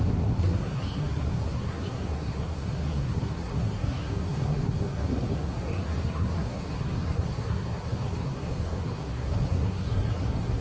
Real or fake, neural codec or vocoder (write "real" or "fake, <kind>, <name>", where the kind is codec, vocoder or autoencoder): fake, codec, SNAC